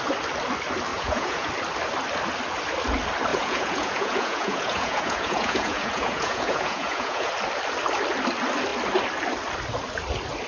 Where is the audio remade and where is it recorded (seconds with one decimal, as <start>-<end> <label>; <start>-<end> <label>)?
0.0-0.9 recorded; 0.9-1.5 remade; 1.5-3.3 recorded; 3.3-7.3 remade; 7.3-10.5 recorded